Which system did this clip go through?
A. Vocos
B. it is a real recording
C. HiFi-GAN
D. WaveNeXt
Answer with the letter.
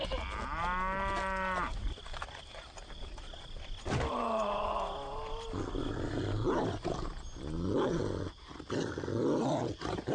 B